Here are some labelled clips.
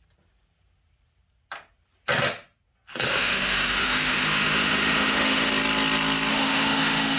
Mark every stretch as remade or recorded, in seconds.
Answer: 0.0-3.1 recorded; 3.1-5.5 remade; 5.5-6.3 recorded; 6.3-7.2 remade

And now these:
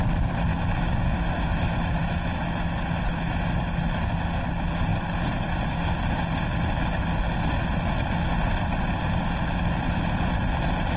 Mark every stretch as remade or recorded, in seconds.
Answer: 0.0-0.5 recorded; 0.5-3.5 remade; 3.5-11.0 recorded

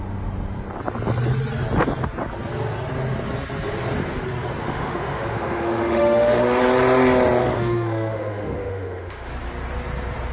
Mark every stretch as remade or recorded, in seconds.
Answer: 0.0-4.6 recorded; 4.6-6.6 remade; 6.6-7.4 recorded; 7.4-9.3 remade; 9.3-10.3 recorded

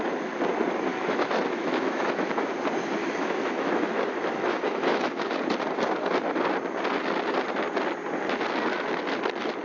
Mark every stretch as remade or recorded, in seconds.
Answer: 0.0-0.9 recorded; 0.9-2.3 remade; 2.3-3.0 recorded; 3.0-5.2 remade; 5.2-9.6 recorded

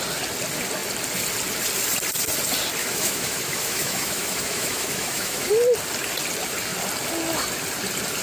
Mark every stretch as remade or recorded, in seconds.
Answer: 0.0-2.8 recorded; 2.8-5.5 remade; 5.5-8.2 recorded